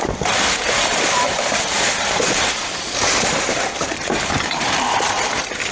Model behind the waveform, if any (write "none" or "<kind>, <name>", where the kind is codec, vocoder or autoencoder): vocoder, BigVGAN v2